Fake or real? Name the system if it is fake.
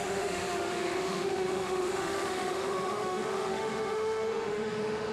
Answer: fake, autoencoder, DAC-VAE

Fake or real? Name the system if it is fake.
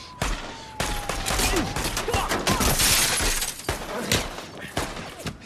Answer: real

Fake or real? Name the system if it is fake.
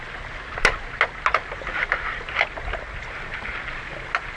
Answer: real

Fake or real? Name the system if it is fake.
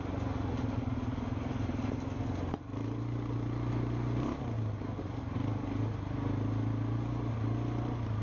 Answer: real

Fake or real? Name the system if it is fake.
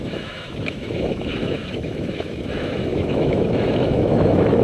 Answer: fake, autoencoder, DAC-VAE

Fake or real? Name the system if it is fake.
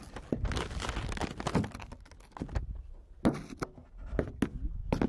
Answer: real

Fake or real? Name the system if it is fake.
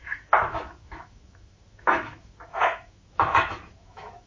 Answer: fake, autoencoder, DAC-VAE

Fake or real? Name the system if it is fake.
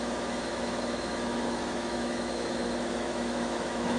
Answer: fake, autoencoder, DAC-VAE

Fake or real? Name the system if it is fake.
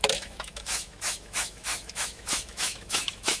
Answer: fake, autoencoder, DAC-VAE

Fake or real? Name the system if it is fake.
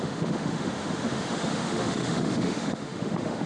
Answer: fake, autoencoder, DAC-VAE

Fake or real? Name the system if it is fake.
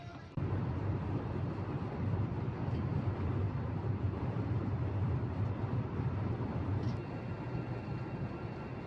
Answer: real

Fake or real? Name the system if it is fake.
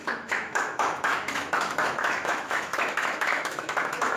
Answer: fake, autoencoder, DAC-VAE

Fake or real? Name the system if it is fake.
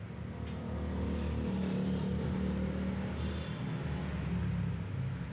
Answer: real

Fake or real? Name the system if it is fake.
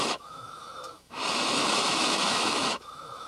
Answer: fake, autoencoder, DAC-VAE